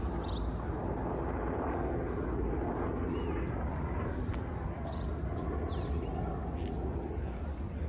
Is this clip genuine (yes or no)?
yes